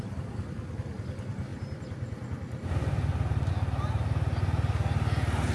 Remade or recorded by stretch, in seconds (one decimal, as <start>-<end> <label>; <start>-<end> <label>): 0.0-5.5 recorded